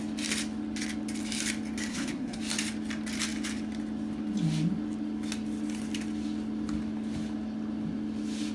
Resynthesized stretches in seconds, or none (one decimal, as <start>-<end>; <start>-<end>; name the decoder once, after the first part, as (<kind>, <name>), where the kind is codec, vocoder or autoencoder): 1.9-2.4 (codec, SNAC)